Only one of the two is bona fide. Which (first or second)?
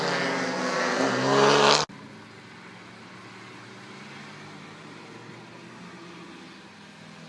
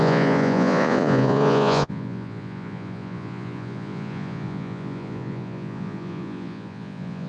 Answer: first